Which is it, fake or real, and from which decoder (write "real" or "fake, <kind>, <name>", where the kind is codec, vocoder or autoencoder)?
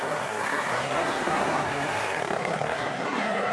fake, codec, SNAC